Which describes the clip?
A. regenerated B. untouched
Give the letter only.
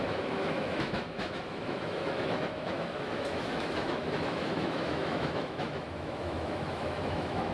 A